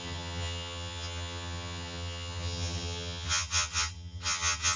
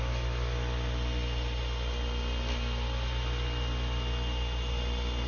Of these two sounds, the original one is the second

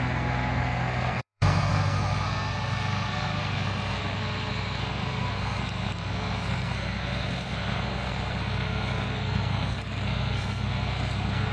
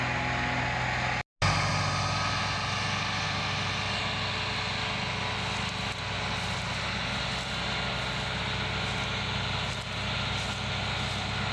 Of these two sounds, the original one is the second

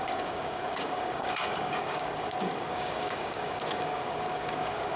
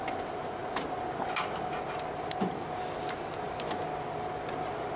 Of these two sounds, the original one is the second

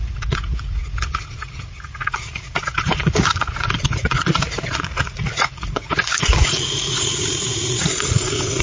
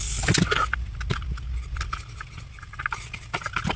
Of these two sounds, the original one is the second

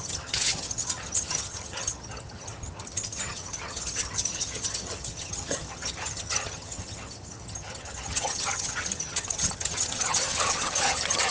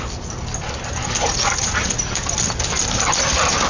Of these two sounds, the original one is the second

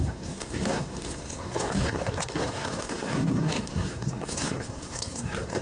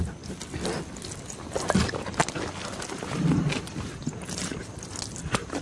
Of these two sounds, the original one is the second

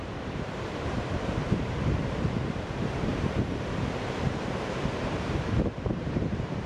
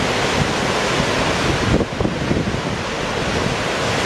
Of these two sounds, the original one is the second